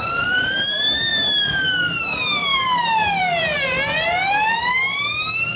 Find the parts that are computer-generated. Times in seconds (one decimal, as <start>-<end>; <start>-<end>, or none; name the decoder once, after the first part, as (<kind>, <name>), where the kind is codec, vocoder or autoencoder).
0.0-1.1 (vocoder, BigVGAN v2); 2.0-5.6